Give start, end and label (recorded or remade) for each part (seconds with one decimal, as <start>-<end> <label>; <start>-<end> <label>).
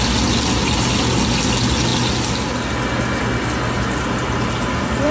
0.0-5.1 recorded